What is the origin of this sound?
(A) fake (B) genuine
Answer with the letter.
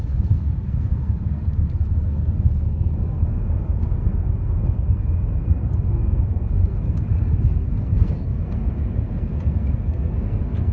A